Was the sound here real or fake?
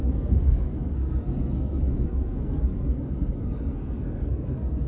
fake